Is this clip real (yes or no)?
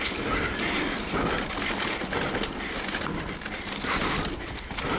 yes